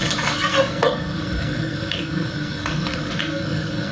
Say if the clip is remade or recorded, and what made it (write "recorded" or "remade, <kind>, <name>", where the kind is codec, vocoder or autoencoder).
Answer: remade, codec, SNAC